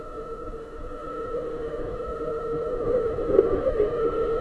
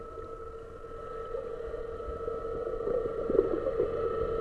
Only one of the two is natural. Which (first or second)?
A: second